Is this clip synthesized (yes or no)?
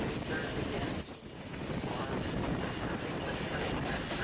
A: yes